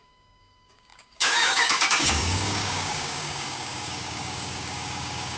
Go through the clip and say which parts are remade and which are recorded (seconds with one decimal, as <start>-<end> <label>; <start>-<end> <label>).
0.0-5.4 remade